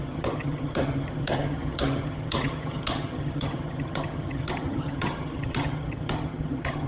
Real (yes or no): no